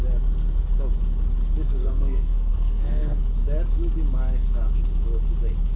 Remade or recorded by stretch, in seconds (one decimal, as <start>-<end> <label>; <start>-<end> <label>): 0.0-1.8 recorded; 1.8-3.2 remade; 3.2-5.8 recorded